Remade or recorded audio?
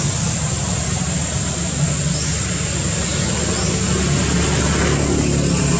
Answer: recorded